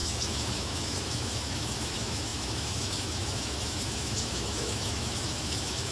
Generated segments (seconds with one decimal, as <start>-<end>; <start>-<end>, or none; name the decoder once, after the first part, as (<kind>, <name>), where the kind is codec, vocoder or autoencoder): 0.0-5.9 (autoencoder, DAC-VAE)